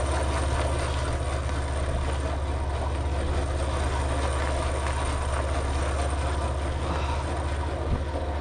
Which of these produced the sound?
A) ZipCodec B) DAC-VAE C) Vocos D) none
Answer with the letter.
D